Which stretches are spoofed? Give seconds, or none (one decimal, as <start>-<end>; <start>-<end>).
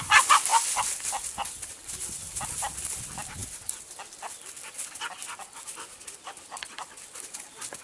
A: none